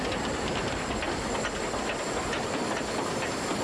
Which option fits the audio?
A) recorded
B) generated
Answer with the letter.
A